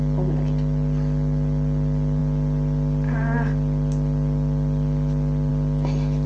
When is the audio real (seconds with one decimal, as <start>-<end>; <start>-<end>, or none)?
0.0-6.3